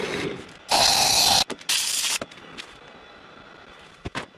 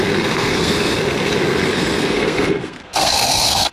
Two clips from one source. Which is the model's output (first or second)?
second